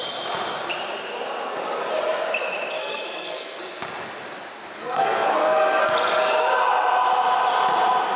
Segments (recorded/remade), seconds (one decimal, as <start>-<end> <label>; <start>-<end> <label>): 0.0-2.8 recorded; 2.8-3.6 remade; 3.6-4.8 recorded; 4.8-5.8 remade; 5.8-8.2 recorded